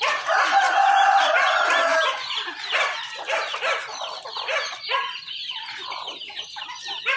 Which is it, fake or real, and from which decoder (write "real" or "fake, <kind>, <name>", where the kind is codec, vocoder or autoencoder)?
fake, vocoder, BigVGAN v2